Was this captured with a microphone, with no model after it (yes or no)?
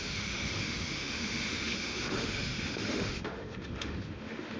no